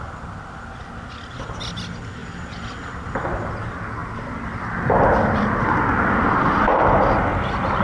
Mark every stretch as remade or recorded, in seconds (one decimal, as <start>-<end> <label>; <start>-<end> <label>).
0.0-7.8 recorded